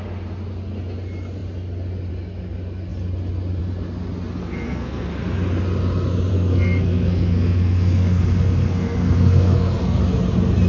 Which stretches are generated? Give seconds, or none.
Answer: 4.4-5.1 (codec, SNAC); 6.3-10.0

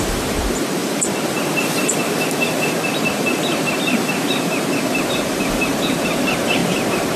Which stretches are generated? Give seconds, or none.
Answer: 0.0-7.2 (vocoder, BigVGAN v2)

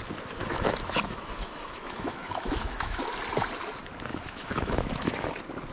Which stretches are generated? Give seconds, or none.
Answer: 0.4-3.0 (autoencoder, DAC-VAE); 4.1-5.3

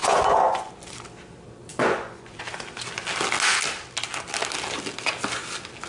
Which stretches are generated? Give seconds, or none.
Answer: 0.0-0.7 (vocoder, Vocos); 1.7-2.4

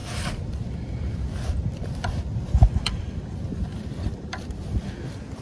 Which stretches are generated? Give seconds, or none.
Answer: 0.0-1.4 (vocoder, BigVGAN v2); 2.3-4.5

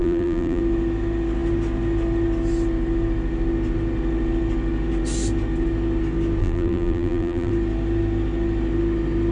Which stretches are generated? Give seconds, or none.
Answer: 0.0-0.6 (vocoder, BigVGAN v2); 6.4-7.5

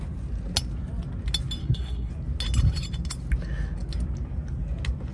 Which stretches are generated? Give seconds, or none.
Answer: 1.6-2.1 (codec, SNAC)

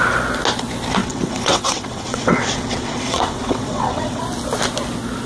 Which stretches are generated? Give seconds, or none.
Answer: 1.0-4.2 (vocoder, WaveNeXt)